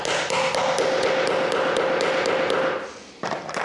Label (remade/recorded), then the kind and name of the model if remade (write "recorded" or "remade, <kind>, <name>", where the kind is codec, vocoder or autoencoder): recorded